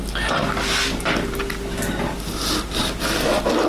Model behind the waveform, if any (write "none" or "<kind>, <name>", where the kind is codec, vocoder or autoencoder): none